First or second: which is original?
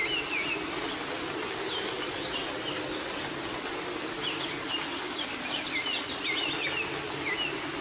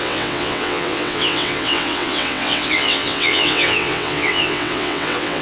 first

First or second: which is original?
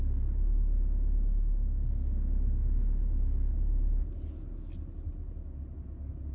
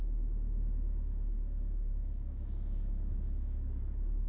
first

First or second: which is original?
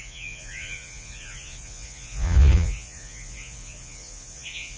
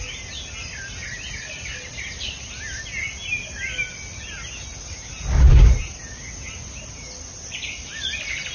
second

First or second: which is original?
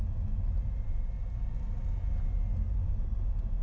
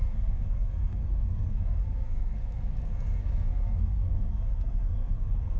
first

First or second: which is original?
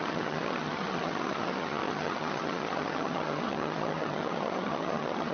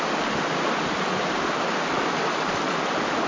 second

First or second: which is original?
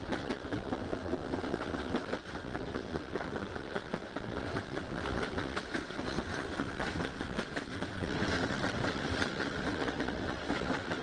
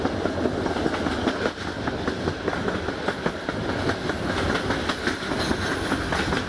second